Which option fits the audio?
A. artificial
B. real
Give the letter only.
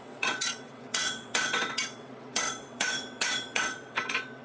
A